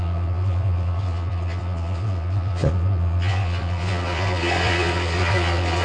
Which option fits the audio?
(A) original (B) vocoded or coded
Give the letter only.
B